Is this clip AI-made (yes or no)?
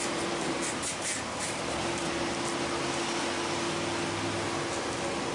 no